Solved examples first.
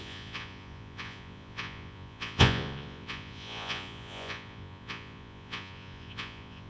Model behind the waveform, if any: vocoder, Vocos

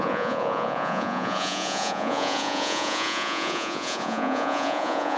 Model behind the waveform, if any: vocoder, Vocos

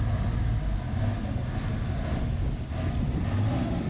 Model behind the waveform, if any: none